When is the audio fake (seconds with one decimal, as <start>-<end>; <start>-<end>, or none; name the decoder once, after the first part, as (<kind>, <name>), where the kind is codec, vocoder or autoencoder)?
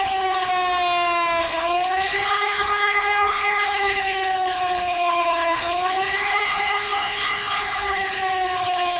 0.0-0.5 (codec, HILCodec); 1.4-9.0